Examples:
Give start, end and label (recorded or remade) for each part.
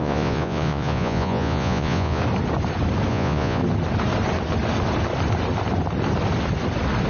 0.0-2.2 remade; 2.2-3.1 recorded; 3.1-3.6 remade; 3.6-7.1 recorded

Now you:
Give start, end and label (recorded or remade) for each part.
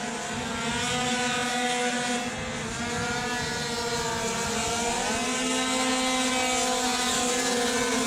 0.0-8.1 recorded